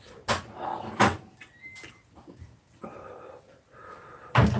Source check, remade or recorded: recorded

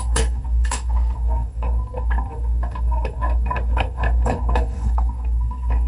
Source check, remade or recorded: remade